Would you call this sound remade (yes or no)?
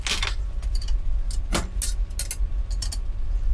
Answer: no